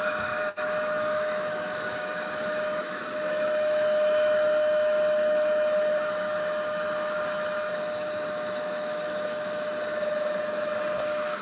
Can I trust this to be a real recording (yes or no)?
no